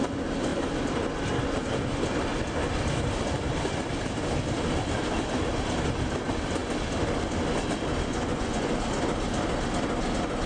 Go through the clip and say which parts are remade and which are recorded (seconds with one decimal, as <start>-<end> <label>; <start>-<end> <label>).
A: 0.0-8.1 recorded; 8.1-8.7 remade; 8.7-10.5 recorded